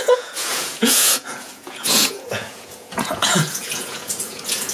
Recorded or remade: remade